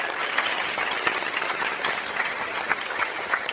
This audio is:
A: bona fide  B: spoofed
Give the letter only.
B